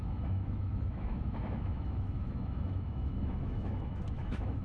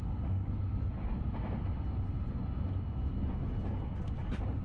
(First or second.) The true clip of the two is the second